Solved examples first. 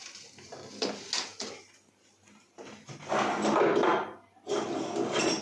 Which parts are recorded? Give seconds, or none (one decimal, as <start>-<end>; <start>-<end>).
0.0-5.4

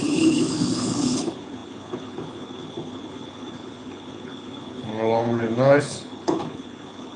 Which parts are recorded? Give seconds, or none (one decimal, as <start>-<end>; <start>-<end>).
none

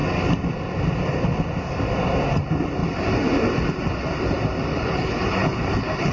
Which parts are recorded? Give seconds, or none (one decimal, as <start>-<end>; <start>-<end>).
0.0-4.7

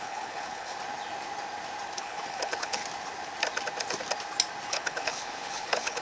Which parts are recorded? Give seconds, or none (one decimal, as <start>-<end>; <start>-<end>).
0.7-2.0; 2.8-4.7